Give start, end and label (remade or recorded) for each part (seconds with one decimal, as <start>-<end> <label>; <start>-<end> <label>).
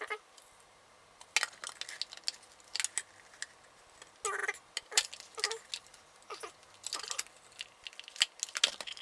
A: 0.0-9.0 recorded